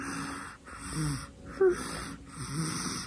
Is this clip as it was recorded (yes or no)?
yes